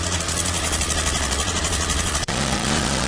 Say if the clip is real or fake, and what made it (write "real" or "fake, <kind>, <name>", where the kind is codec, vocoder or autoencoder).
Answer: fake, vocoder, Vocos